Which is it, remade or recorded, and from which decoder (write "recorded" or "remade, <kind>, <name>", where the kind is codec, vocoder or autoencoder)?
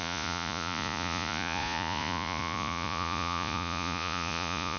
remade, vocoder, Vocos